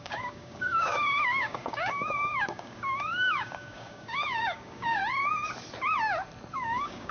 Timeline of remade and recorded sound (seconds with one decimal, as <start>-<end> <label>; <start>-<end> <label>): 0.0-5.0 remade; 5.0-6.5 recorded; 6.5-7.1 remade